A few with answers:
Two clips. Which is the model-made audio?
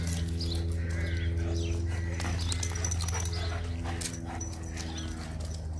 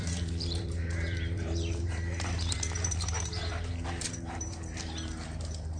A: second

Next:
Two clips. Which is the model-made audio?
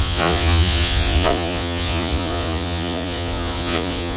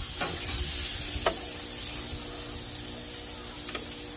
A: first